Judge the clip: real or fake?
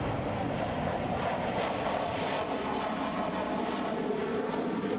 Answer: real